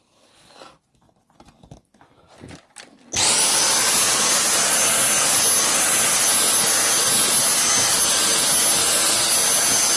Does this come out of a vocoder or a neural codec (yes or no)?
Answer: no